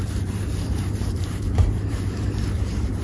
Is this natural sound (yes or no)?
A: no